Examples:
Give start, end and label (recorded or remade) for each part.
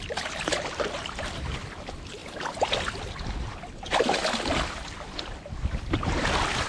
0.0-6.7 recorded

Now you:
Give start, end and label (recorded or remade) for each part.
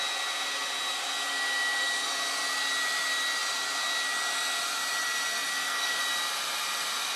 0.0-5.5 recorded; 5.5-6.0 remade; 6.0-7.2 recorded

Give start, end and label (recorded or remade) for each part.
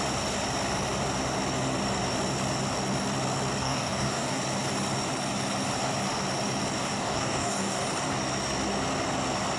0.0-3.6 recorded; 3.6-4.4 remade; 4.4-6.8 recorded; 6.8-7.8 remade; 7.8-9.6 recorded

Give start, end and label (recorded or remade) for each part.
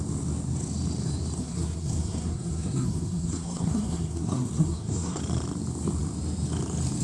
0.0-1.4 recorded; 1.4-5.2 remade; 5.2-7.0 recorded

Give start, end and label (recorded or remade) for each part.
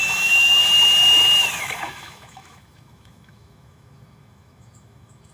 0.0-0.6 remade; 0.6-1.6 recorded; 1.6-5.3 remade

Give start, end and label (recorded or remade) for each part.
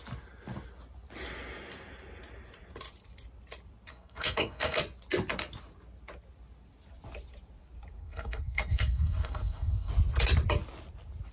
0.0-3.9 recorded; 3.9-4.8 remade; 4.8-8.0 recorded; 8.0-9.9 remade; 9.9-11.3 recorded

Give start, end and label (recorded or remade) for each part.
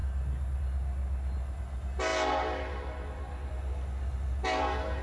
0.0-5.0 recorded